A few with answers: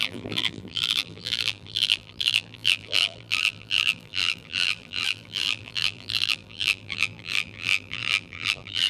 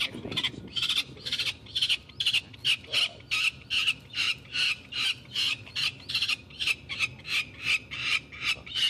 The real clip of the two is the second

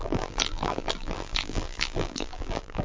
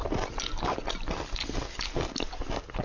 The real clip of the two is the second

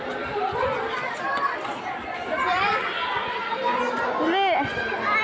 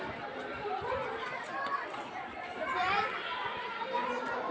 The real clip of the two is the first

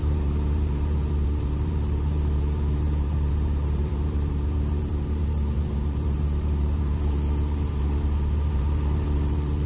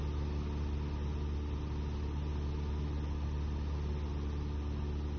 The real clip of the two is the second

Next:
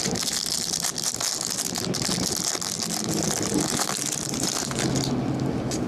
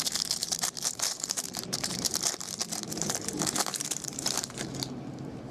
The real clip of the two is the first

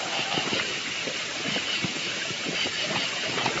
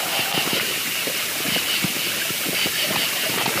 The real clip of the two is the second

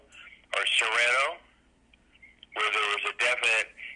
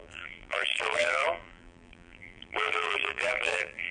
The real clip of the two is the first